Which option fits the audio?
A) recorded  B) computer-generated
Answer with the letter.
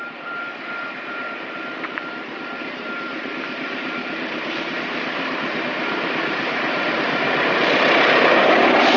B